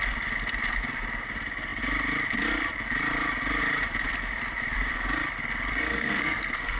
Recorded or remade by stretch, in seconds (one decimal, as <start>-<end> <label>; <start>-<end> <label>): 0.0-5.7 recorded; 5.7-6.8 remade